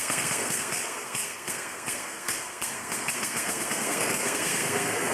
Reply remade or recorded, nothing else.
remade